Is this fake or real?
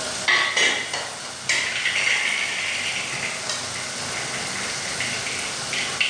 real